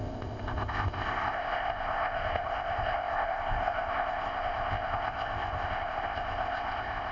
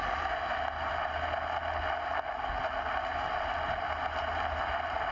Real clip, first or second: second